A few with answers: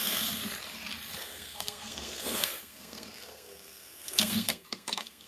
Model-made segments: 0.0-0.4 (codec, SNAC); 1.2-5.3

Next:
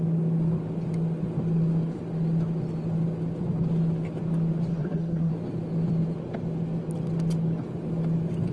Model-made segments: 4.7-5.3 (codec, SNAC)